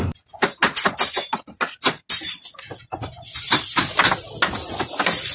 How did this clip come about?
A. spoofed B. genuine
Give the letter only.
B